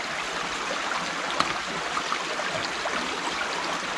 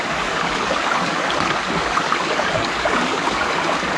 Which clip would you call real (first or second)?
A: first